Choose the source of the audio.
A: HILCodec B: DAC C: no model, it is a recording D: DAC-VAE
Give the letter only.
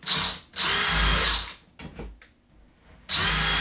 C